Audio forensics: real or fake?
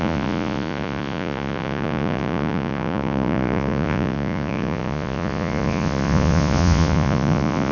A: fake